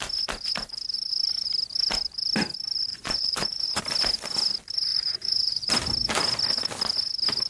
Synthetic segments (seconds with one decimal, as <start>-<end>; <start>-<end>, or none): 2.9-3.8; 4.9-5.7